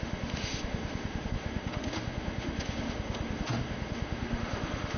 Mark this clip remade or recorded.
remade